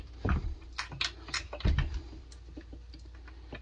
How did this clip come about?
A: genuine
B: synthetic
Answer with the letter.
A